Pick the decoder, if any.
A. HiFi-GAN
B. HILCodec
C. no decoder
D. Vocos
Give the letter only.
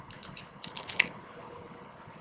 B